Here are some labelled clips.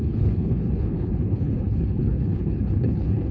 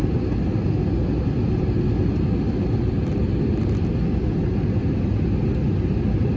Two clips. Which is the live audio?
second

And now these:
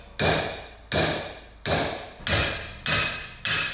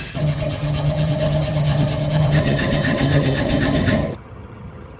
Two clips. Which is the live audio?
first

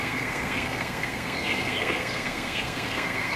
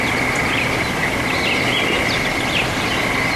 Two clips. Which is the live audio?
second